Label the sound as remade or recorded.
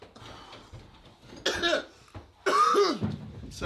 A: recorded